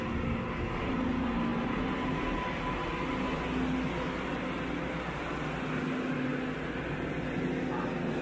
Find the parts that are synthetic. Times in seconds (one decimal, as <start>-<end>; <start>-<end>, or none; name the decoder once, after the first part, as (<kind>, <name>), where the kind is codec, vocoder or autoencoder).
none